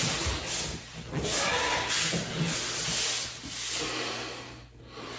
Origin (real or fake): real